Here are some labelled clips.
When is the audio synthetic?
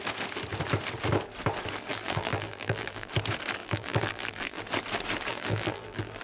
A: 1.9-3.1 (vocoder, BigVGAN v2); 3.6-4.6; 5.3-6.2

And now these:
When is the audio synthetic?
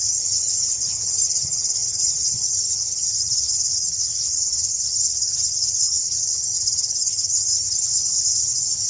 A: 0.0-8.9 (vocoder, HiFi-GAN)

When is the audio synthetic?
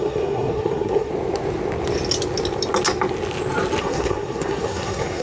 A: 0.0-1.1 (codec, SNAC); 3.8-5.2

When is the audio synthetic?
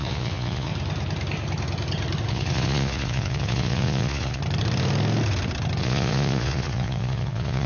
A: 0.0-0.7 (vocoder, Vocos); 2.3-4.4; 5.8-7.7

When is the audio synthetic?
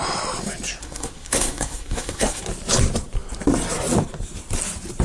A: 0.8-2.4 (codec, SNAC)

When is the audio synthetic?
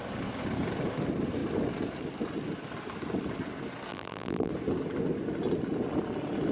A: 3.9-4.5 (vocoder, BigVGAN v2)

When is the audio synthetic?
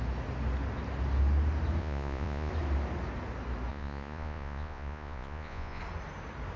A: 1.8-2.5 (vocoder, Vocos); 3.7-5.8